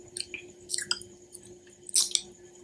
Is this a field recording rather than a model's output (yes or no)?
yes